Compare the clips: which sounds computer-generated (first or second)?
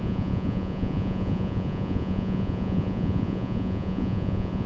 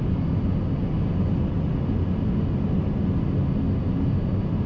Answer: first